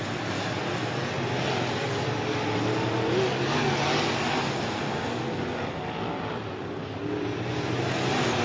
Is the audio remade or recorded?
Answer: recorded